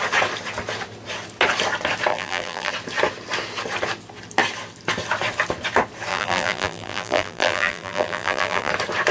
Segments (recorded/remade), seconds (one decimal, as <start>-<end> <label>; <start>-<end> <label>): 0.0-2.1 recorded; 2.1-2.7 remade; 2.7-6.1 recorded; 6.1-8.7 remade; 8.7-9.1 recorded